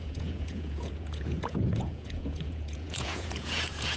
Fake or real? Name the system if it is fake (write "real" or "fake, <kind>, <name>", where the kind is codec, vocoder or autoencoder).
fake, vocoder, Vocos